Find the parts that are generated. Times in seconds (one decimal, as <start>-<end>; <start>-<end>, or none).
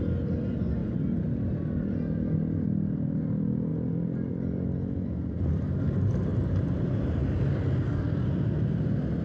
6.3-7.2